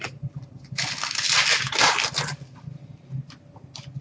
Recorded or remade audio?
recorded